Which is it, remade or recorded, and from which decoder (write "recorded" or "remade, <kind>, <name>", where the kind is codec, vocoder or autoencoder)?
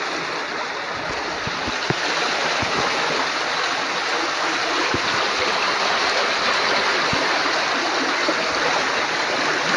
recorded